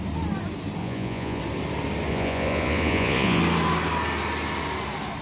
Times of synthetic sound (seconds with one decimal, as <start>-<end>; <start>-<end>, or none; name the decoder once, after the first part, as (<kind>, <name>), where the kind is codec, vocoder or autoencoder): 0.8-1.4 (vocoder, Vocos); 2.1-3.4